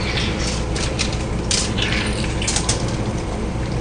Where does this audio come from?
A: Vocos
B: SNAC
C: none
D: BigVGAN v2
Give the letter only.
D